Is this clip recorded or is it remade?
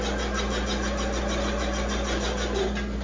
recorded